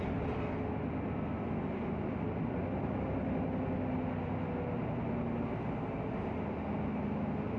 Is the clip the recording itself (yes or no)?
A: yes